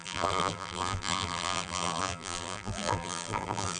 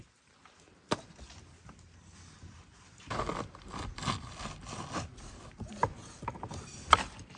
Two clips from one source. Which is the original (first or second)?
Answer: second